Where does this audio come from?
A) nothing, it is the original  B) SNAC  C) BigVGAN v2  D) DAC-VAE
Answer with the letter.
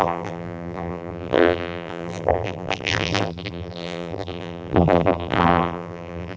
C